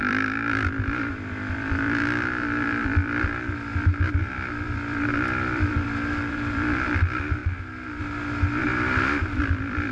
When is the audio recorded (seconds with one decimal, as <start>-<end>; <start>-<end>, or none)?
7.4-8.0